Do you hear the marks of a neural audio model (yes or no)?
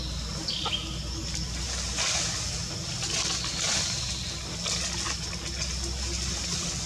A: no